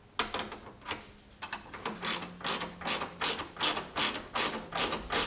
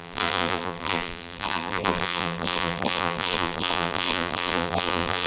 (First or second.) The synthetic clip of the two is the second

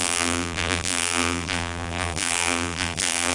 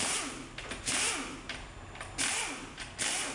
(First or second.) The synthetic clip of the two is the first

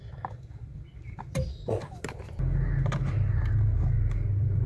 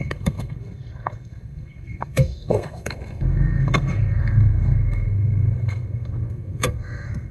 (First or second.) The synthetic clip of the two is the second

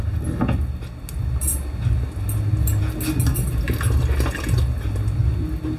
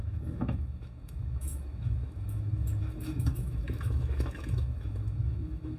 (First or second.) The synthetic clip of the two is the second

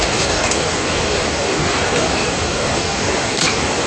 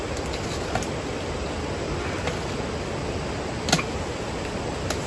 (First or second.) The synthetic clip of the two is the first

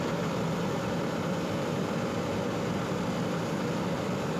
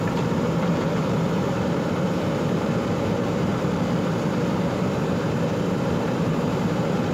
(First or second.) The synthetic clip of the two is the second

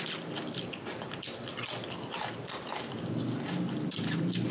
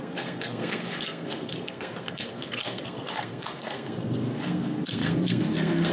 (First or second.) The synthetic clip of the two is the second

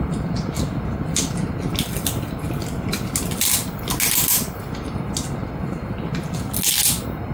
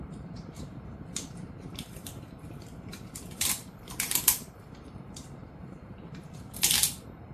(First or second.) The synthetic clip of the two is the second